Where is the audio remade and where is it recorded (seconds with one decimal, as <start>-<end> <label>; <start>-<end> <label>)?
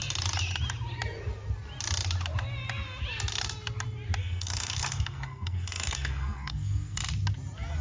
0.0-4.2 recorded; 4.2-7.0 remade; 7.0-7.8 recorded